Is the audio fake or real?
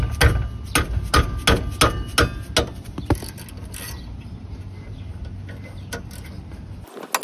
real